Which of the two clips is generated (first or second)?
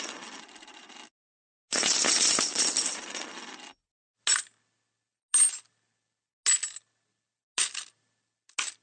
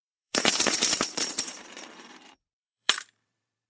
second